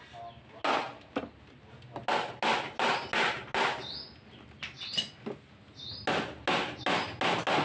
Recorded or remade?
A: recorded